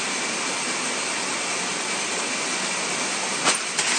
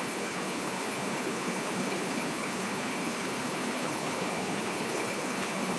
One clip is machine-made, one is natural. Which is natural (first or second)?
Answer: first